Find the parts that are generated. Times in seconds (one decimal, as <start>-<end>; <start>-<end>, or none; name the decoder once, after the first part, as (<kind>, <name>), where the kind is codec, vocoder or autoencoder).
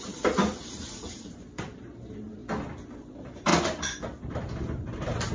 0.0-2.4 (vocoder, BigVGAN v2); 3.0-3.5; 4.2-5.3